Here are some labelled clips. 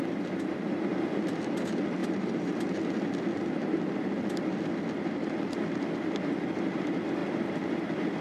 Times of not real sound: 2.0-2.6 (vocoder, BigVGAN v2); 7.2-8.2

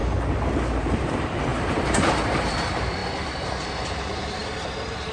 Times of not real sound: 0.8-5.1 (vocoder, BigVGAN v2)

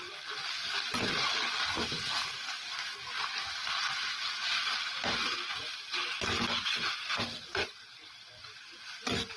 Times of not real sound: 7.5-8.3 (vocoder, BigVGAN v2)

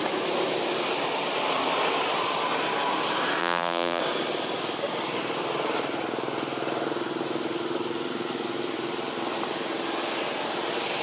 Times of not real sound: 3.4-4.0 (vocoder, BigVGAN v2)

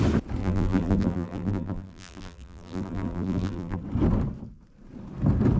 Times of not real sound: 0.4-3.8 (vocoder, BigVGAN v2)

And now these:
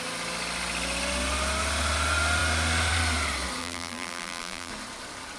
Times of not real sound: 3.6-4.7 (vocoder, BigVGAN v2)